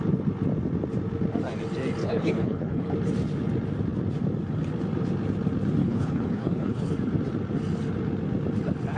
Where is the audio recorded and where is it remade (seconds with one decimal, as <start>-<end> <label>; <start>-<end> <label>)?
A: 0.0-2.0 recorded; 2.0-2.9 remade; 2.9-5.8 recorded; 5.8-6.9 remade; 6.9-9.0 recorded